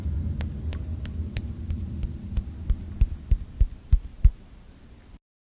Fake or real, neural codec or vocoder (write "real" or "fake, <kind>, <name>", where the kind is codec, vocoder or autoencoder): real